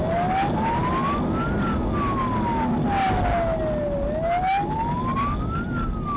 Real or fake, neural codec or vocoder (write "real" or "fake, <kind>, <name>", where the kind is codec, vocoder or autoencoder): real